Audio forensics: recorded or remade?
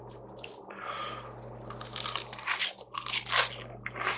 recorded